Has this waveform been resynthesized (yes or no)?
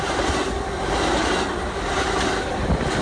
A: no